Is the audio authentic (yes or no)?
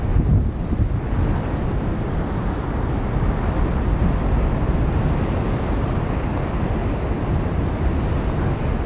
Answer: yes